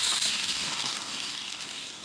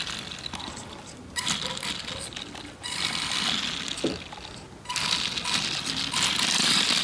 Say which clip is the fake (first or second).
first